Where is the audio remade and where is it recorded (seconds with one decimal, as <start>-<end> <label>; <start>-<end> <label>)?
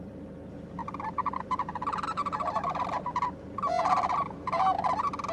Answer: 0.0-5.3 recorded